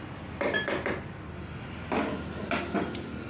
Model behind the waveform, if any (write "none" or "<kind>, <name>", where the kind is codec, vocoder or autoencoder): none